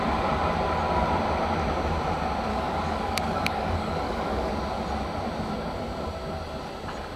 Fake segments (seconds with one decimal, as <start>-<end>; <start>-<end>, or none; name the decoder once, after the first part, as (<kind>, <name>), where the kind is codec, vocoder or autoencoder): 2.5-4.5 (codec, DAC)